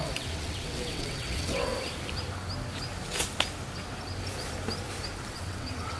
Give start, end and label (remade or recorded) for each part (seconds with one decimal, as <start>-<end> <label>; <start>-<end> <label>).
0.0-1.7 remade; 1.7-5.3 recorded; 5.3-6.0 remade